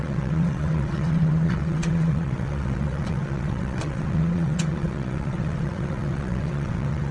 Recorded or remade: remade